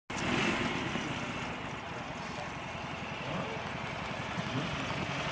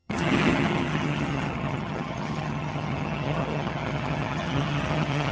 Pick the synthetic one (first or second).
second